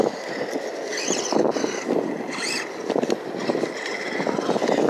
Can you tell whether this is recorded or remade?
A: recorded